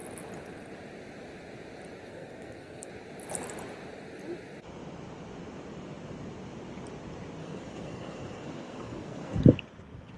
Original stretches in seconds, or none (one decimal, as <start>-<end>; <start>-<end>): 0.0-2.1; 2.9-7.4; 9.4-10.2